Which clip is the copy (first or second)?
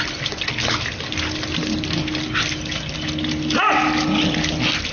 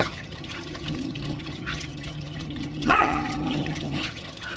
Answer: second